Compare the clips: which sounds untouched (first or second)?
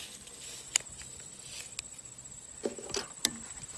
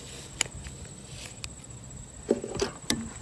first